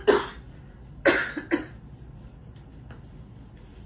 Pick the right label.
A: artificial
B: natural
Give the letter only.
B